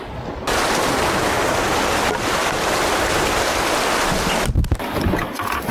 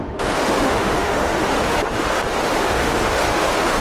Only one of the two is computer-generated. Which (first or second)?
second